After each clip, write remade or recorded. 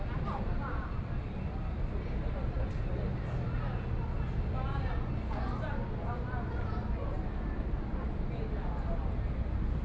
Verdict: recorded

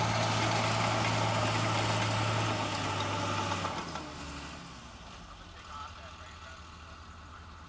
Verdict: recorded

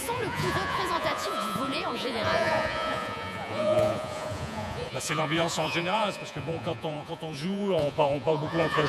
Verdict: remade